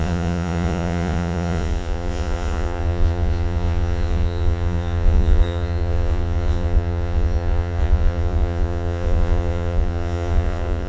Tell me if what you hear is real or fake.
fake